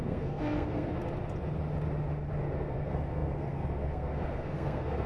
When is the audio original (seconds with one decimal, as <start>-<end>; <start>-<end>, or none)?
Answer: 0.9-2.5